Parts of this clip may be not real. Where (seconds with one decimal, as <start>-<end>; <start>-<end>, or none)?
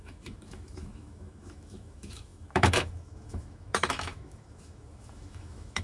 0.0-5.8